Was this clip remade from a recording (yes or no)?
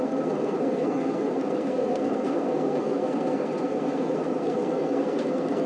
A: yes